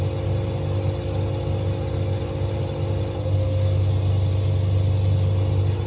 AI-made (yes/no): no